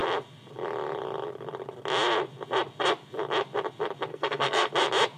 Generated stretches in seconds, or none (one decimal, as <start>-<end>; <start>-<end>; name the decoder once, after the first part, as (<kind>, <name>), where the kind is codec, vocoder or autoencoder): 4.1-4.7 (codec, SNAC)